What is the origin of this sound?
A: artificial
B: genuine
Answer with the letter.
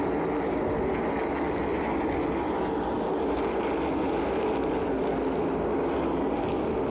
B